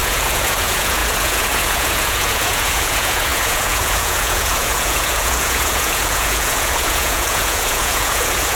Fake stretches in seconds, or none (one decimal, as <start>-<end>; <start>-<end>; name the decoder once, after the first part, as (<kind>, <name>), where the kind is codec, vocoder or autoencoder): 0.0-8.6 (vocoder, Vocos)